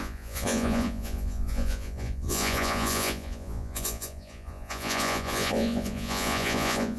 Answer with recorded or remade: remade